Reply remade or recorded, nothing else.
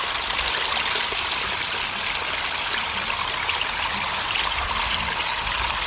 recorded